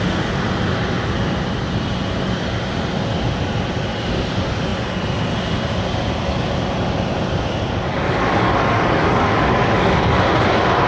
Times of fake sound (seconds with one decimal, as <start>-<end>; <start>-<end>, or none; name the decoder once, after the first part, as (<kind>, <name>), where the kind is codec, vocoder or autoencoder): 7.9-10.2 (codec, DAC)